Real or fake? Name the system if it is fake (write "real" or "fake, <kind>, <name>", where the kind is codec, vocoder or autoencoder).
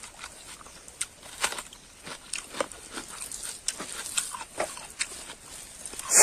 real